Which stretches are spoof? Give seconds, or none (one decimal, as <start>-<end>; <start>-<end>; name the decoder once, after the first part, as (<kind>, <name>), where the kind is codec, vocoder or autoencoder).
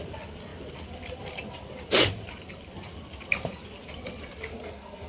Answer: 4.5-5.1 (codec, SNAC)